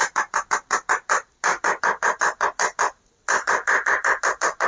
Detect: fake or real real